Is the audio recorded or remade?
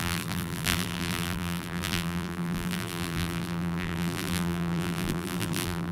remade